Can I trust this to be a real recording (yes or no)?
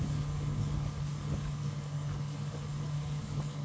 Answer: no